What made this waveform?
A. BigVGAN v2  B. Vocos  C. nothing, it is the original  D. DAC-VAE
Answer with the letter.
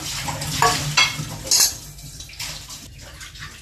C